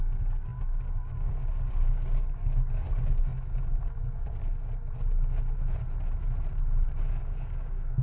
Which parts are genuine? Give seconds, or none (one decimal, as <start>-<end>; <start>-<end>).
4.4-7.2